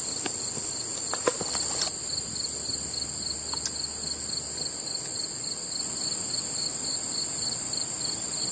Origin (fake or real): real